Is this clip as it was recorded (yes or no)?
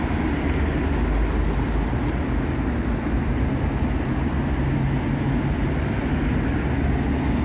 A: yes